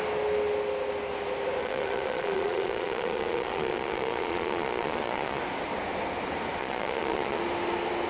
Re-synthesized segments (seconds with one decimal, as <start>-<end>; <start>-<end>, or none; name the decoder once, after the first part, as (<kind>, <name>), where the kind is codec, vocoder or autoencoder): 1.6-5.4 (vocoder, Vocos); 6.6-7.4